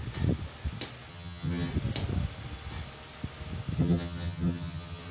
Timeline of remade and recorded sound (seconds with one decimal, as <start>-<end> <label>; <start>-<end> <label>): 0.0-1.1 recorded; 1.1-1.7 remade; 1.7-3.8 recorded; 3.8-5.1 remade